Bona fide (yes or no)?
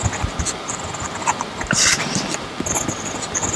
yes